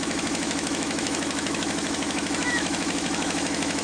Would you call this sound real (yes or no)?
no